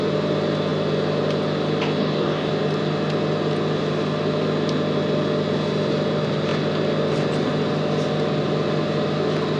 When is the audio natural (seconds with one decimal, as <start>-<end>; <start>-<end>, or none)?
0.0-2.0; 2.5-9.6